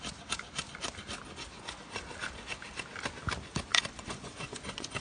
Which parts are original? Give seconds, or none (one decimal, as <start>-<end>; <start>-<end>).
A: 0.0-3.7